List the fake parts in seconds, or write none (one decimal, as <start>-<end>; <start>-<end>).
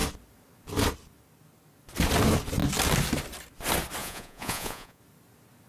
4.0-5.0